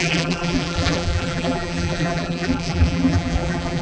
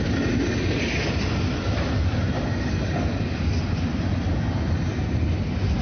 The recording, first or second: second